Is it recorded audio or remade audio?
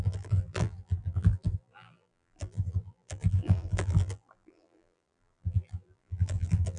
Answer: remade